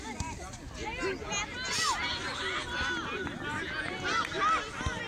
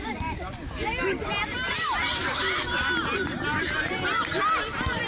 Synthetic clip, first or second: second